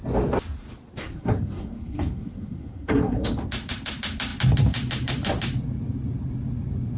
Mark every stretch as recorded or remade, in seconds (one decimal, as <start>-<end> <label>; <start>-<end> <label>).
0.0-1.0 recorded; 1.0-3.3 remade; 3.3-7.0 recorded